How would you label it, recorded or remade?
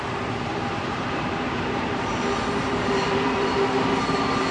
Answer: remade